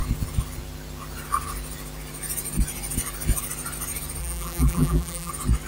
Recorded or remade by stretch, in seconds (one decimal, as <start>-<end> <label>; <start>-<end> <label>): 0.0-4.2 recorded; 4.2-5.3 remade; 5.3-5.7 recorded